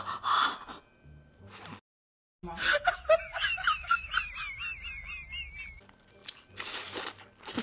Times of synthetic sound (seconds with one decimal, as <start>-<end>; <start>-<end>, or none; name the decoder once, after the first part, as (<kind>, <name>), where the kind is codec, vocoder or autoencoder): 3.5-4.1 (autoencoder, DAC-VAE)